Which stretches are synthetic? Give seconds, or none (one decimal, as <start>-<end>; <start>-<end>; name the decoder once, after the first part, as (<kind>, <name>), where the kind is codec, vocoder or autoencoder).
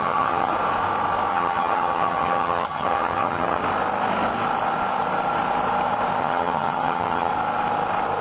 0.0-0.5 (vocoder, HiFi-GAN); 1.3-3.6; 6.2-7.3